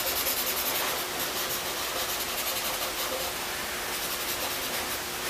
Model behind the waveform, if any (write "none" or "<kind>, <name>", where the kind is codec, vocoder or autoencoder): none